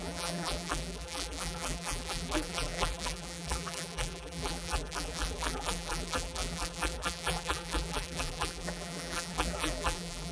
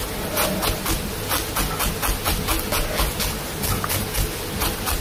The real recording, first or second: second